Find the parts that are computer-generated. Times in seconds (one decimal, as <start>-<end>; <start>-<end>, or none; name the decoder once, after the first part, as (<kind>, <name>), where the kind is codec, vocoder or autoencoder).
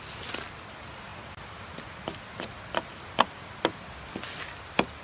none